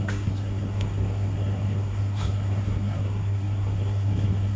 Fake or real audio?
fake